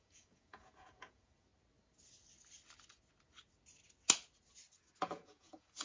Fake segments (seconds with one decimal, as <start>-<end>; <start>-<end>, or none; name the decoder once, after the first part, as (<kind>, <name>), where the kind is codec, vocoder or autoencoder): 0.0-1.5 (vocoder, Vocos); 5.0-5.8